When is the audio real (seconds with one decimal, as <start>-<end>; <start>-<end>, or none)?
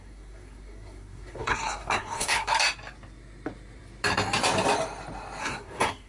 2.5-5.4